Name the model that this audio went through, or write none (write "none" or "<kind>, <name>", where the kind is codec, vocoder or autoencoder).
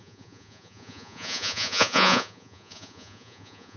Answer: vocoder, Vocos